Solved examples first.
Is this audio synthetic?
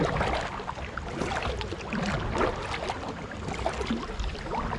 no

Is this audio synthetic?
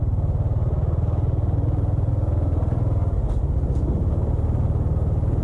no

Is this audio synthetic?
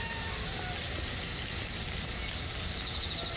no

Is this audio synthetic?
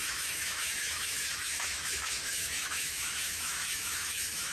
yes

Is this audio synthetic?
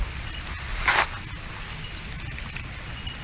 no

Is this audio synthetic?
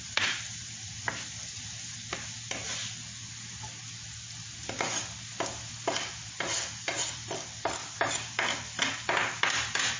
no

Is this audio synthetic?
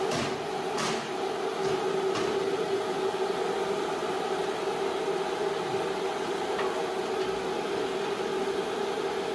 no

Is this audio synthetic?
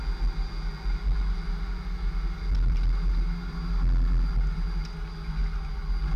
no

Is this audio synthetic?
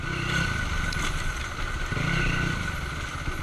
no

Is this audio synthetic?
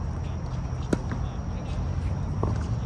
no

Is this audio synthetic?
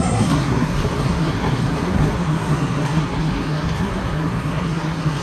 yes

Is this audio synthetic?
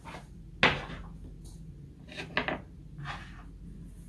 no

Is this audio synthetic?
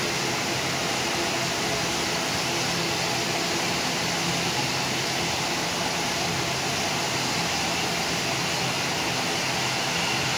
no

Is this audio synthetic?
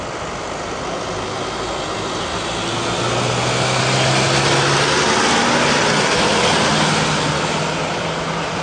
no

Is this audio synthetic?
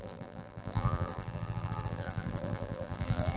yes